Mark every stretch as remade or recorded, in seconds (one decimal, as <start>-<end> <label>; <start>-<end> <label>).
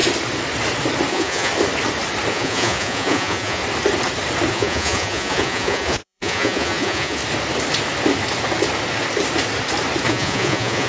0.0-1.1 recorded; 1.1-1.5 remade; 1.5-2.3 recorded; 2.3-3.6 remade; 3.6-4.5 recorded; 4.5-7.2 remade; 7.2-10.1 recorded; 10.1-10.9 remade